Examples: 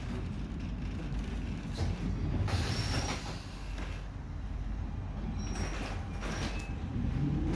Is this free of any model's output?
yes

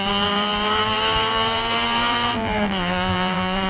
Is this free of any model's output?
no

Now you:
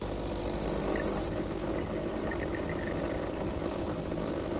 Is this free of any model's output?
yes